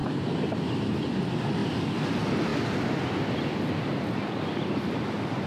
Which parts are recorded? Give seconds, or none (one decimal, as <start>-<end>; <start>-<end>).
0.0-5.5